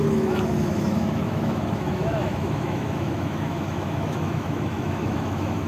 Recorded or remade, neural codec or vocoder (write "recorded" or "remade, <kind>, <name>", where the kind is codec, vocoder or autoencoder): remade, autoencoder, DAC-VAE